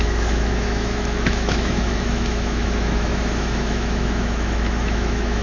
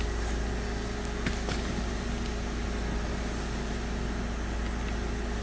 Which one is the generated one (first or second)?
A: first